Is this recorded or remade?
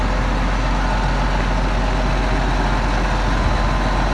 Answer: recorded